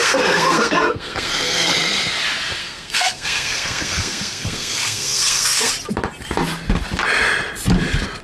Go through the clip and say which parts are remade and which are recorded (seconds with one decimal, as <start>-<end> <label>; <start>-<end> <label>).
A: 0.0-1.7 remade; 1.7-2.6 recorded; 2.6-5.7 remade; 5.7-8.2 recorded